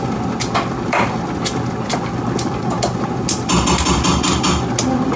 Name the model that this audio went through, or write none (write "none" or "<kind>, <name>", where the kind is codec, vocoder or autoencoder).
none